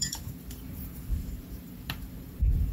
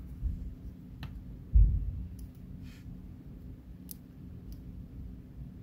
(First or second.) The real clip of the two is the second